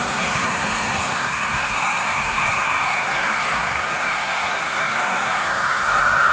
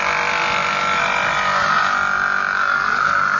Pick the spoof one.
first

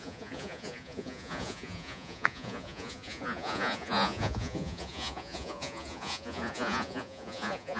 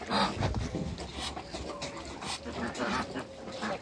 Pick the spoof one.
first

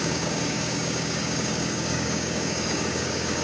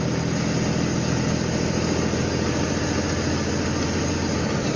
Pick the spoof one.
first